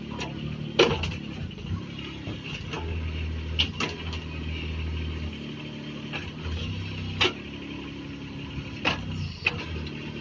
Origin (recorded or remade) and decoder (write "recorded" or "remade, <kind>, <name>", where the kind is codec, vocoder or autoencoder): recorded